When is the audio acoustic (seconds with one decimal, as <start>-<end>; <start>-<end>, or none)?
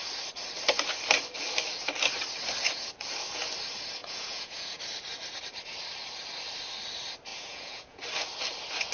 0.0-4.0; 4.8-7.3; 8.0-8.9